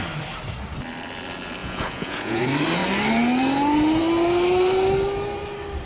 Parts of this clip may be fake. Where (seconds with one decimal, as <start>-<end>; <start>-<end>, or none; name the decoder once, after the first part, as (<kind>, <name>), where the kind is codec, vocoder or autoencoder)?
1.6-2.4 (vocoder, Vocos)